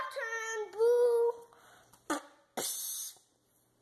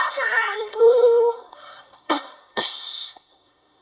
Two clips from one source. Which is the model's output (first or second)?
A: second